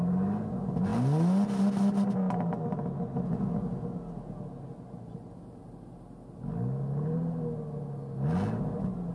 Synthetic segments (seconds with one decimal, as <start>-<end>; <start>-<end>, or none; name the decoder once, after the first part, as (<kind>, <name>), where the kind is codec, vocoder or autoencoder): none